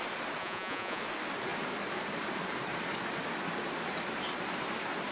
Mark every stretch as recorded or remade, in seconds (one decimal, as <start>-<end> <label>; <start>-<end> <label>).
0.0-0.4 recorded; 0.4-1.0 remade; 1.0-5.1 recorded